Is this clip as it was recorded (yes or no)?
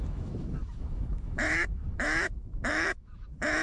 no